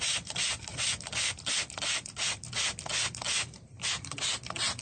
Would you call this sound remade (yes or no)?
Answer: no